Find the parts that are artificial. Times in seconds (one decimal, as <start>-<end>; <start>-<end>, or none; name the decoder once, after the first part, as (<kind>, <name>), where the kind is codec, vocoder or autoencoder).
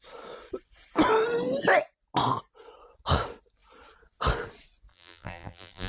4.9-5.9 (vocoder, BigVGAN v2)